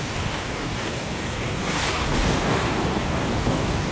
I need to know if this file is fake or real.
fake